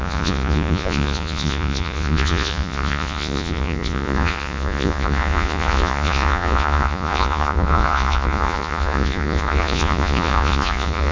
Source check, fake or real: fake